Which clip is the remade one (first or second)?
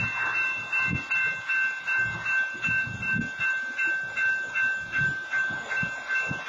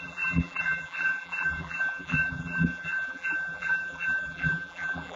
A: second